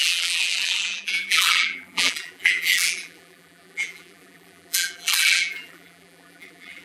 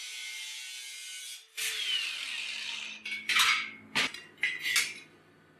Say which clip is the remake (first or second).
first